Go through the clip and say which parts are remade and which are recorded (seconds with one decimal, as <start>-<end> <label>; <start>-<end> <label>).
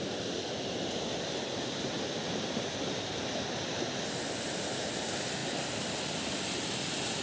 0.0-7.2 recorded